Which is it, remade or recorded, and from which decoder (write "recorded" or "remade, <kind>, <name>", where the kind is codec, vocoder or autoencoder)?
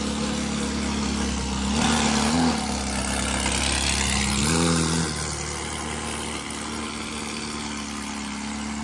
recorded